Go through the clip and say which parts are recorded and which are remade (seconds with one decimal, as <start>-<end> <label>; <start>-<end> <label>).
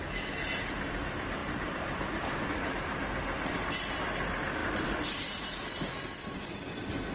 0.0-0.5 recorded; 0.5-1.0 remade; 1.0-1.4 recorded; 1.4-2.4 remade; 2.4-4.6 recorded; 4.6-5.6 remade; 5.6-7.1 recorded